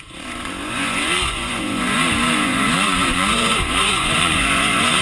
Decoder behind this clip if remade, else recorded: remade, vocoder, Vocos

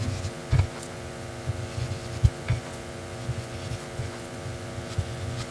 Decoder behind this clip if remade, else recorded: remade, vocoder, Vocos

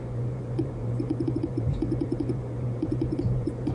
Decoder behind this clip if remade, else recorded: remade, vocoder, Vocos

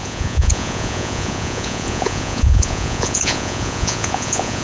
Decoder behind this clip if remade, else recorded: remade, vocoder, Vocos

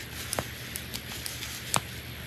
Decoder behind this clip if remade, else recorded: recorded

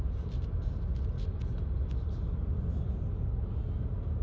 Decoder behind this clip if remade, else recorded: recorded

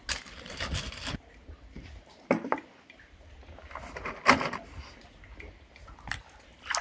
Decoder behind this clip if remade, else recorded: recorded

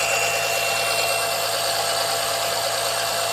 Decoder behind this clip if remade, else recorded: recorded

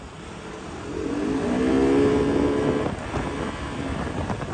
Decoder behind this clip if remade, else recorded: recorded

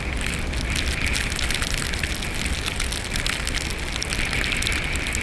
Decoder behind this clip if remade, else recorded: recorded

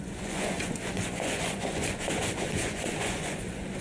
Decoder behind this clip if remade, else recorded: remade, vocoder, Vocos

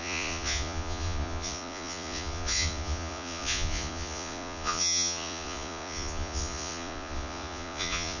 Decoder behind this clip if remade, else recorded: remade, vocoder, Vocos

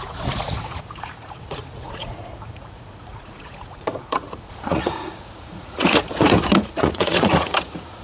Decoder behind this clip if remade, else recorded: remade, vocoder, Vocos